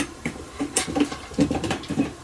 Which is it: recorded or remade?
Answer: remade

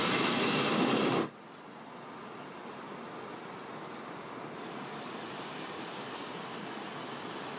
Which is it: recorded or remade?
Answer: recorded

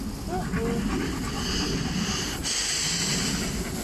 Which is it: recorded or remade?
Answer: recorded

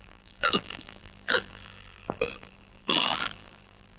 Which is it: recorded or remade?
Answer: remade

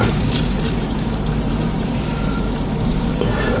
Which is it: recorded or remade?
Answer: remade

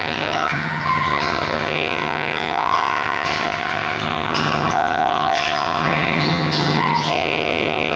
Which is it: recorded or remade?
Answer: remade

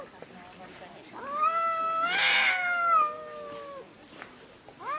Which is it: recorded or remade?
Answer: recorded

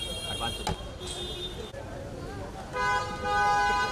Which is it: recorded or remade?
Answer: recorded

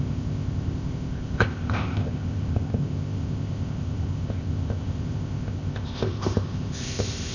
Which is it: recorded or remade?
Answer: remade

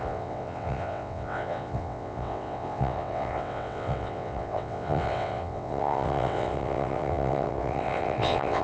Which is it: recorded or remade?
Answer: remade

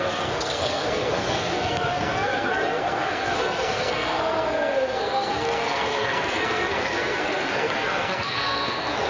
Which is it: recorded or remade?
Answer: remade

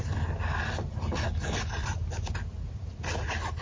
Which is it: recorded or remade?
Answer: recorded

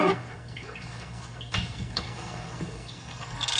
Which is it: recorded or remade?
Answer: remade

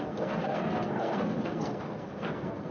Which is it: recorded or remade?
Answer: remade